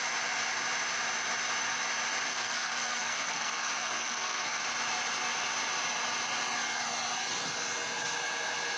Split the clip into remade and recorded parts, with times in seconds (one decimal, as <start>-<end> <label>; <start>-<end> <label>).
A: 0.0-2.3 recorded; 2.3-4.6 remade; 4.6-8.8 recorded